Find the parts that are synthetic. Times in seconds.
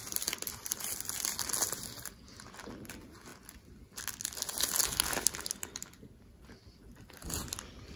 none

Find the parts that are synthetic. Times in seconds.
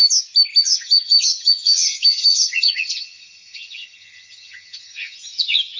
0.6-5.8 (vocoder, HiFi-GAN)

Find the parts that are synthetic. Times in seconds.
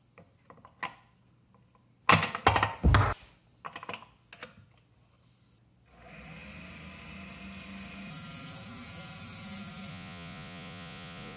9.9-11.4 (vocoder, Vocos)